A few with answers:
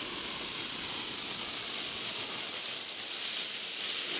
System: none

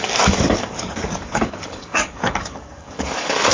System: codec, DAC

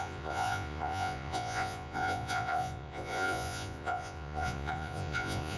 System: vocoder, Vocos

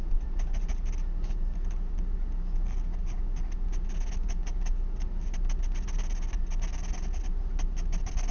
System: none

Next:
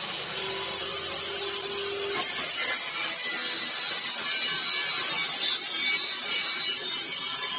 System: none